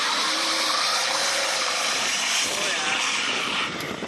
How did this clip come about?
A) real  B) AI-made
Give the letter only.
B